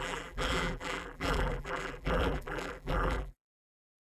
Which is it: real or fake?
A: fake